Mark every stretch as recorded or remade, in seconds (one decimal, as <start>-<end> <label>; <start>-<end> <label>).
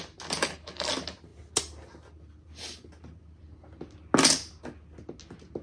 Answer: 0.0-0.4 recorded; 0.4-0.9 remade; 0.9-5.6 recorded